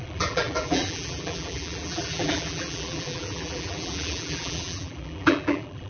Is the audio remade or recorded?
remade